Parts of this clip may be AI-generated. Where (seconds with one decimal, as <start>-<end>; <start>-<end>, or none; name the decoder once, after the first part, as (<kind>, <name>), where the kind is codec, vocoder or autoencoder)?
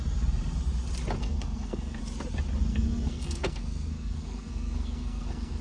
1.2-2.0 (codec, SNAC); 2.7-5.6